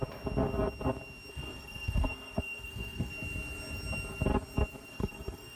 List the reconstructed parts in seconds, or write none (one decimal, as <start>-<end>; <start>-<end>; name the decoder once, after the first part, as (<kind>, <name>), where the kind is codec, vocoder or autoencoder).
1.3-3.1 (codec, SNAC); 4.9-5.6